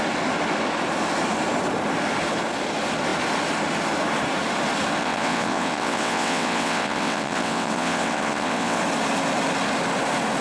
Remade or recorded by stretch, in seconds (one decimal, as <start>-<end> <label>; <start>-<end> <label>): 0.0-5.0 recorded; 5.0-8.8 remade; 8.8-10.4 recorded